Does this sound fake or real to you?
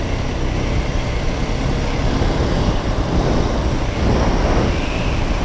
real